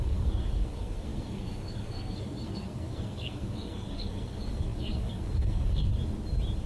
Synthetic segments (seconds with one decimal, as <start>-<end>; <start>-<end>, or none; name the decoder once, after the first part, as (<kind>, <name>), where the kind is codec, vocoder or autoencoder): 0.0-5.9 (codec, SNAC)